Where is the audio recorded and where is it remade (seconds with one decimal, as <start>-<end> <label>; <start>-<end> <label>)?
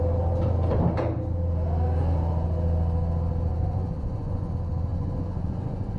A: 0.0-3.6 recorded; 3.6-4.5 remade; 4.5-4.9 recorded; 4.9-6.0 remade